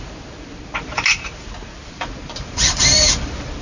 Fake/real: fake